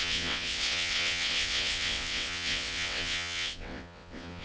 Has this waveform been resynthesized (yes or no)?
yes